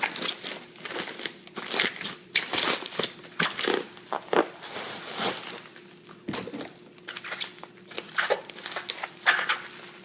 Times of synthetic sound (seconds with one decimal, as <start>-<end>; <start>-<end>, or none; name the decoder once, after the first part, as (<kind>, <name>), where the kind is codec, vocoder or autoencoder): none